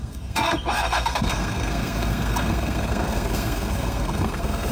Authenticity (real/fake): fake